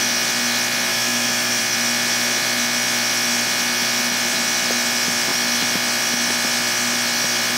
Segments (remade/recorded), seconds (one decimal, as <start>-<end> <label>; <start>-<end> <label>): 0.0-0.9 recorded; 0.9-1.6 remade; 1.6-7.6 recorded